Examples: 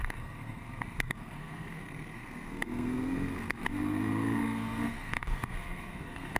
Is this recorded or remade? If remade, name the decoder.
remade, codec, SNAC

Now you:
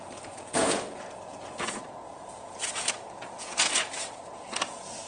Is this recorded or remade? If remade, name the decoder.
remade, vocoder, Vocos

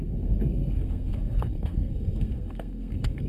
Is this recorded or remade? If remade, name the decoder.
remade, codec, SNAC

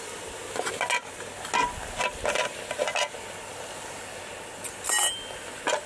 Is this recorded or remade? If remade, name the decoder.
recorded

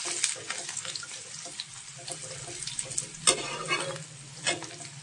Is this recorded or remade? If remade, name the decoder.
recorded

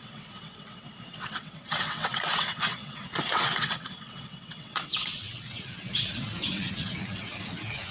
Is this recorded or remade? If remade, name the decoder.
remade, vocoder, WaveNeXt